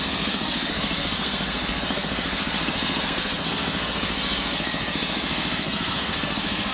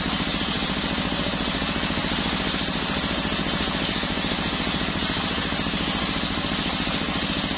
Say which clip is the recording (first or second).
second